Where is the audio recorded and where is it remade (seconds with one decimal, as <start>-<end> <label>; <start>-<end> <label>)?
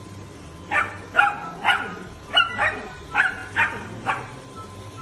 0.0-5.0 recorded